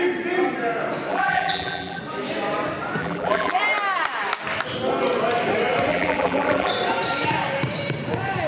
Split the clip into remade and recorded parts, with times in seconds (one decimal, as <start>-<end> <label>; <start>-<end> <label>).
0.0-1.1 recorded; 1.1-2.0 remade; 2.0-3.0 recorded; 3.0-3.6 remade; 3.6-5.9 recorded; 5.9-6.7 remade; 6.7-8.5 recorded